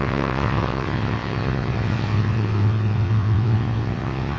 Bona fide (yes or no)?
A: no